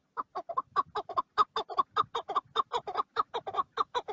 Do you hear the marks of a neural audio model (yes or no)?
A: no